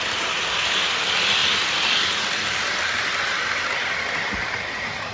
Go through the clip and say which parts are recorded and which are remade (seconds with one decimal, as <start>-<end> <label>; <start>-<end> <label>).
0.0-5.1 recorded